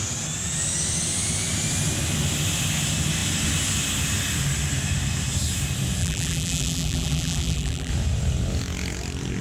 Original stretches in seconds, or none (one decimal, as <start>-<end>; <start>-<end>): 0.0-6.0; 7.9-9.4